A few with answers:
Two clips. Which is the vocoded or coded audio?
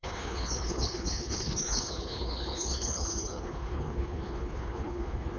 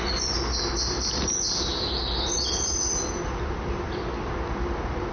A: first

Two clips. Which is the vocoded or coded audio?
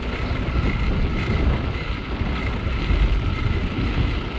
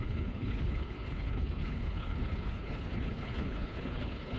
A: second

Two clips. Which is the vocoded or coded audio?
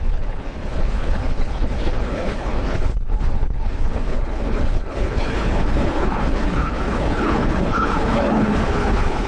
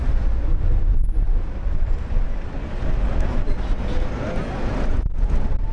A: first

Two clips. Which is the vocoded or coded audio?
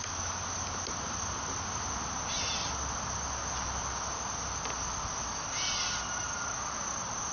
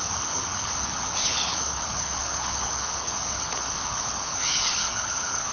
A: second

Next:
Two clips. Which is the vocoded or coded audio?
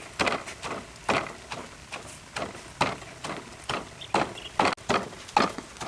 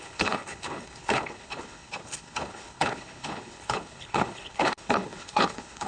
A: second